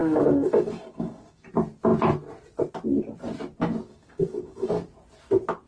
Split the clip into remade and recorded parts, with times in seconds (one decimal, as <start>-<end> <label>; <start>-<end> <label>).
0.0-1.5 remade; 1.5-3.9 recorded; 3.9-4.7 remade; 4.7-5.7 recorded